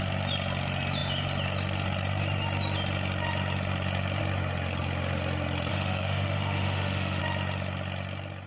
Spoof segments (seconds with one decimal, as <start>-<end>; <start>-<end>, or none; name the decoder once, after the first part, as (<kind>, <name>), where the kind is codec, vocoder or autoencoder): 5.7-7.2 (autoencoder, DAC-VAE)